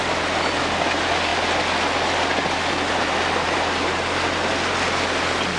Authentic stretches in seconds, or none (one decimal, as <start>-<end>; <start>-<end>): 0.0-5.6